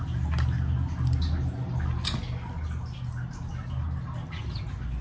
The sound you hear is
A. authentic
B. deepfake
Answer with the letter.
A